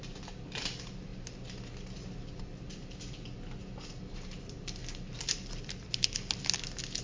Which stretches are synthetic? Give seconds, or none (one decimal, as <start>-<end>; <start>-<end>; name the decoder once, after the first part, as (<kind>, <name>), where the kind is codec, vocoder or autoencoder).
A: none